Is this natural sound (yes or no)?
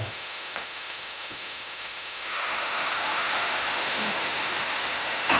no